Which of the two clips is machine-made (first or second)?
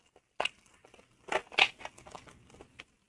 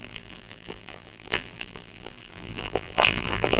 second